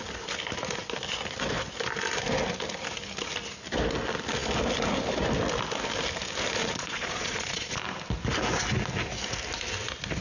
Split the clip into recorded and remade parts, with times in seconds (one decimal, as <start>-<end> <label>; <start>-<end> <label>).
0.0-6.6 recorded; 6.6-7.8 remade; 7.8-10.2 recorded